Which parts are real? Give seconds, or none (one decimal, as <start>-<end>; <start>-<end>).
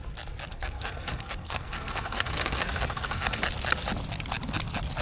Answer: 0.0-0.5; 3.4-5.0